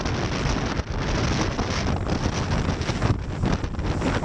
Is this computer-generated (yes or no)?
no